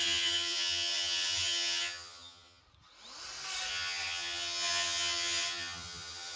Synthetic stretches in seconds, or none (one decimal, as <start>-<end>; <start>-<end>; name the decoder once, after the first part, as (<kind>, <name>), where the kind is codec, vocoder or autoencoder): 0.0-2.6 (vocoder, HiFi-GAN); 3.7-6.4